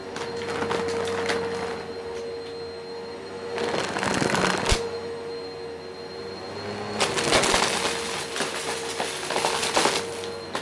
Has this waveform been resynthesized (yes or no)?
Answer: no